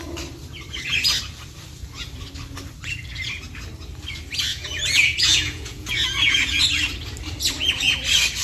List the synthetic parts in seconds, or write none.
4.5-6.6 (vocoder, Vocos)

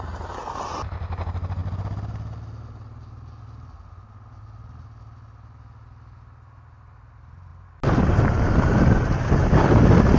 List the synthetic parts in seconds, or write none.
none

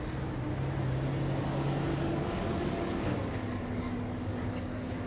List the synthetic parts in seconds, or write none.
1.9-5.1 (codec, DAC)

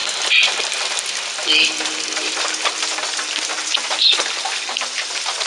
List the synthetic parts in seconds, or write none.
none

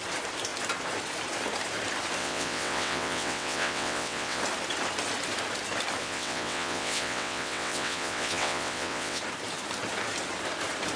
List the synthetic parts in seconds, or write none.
2.2-4.4 (vocoder, WaveNeXt); 6.0-9.2

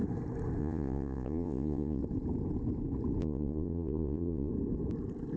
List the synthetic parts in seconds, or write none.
0.6-2.0 (vocoder, Vocos); 3.2-4.5

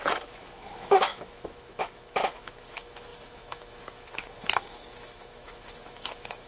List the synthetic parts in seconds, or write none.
0.0-6.5 (autoencoder, DAC-VAE)

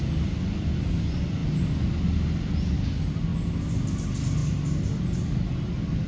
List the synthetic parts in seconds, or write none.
none